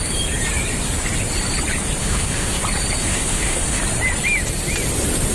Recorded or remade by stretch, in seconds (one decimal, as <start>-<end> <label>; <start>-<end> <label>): 0.0-2.0 recorded; 2.0-2.6 remade; 2.6-3.0 recorded; 3.0-3.8 remade; 3.8-5.3 recorded